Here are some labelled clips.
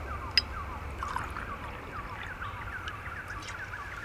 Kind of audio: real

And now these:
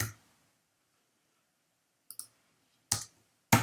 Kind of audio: real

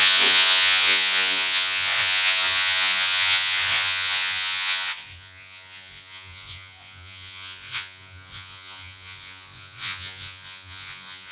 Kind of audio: fake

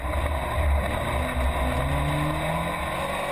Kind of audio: real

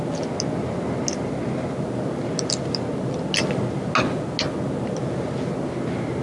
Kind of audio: real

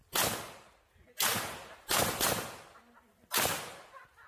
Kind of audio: real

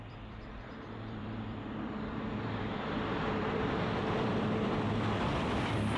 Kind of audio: fake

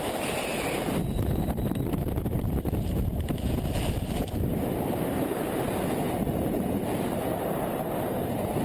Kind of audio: fake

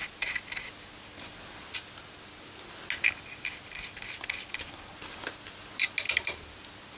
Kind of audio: real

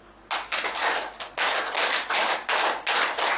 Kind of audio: real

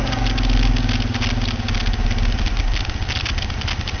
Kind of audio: real